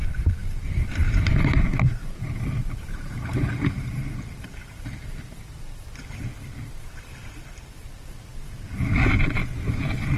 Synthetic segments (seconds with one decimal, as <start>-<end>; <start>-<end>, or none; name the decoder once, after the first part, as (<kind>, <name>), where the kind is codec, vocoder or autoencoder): 0.0-6.3 (vocoder, BigVGAN v2); 6.9-9.4